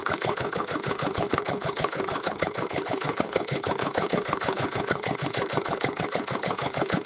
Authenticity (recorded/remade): remade